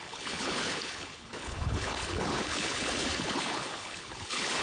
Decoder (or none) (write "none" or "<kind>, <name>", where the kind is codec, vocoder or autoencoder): codec, HILCodec